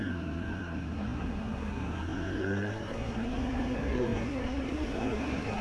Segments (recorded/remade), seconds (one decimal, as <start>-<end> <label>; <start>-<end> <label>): 0.0-5.6 remade